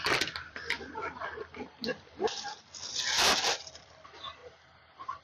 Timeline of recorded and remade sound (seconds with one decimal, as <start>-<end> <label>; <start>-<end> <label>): 0.0-4.4 remade; 4.4-5.2 recorded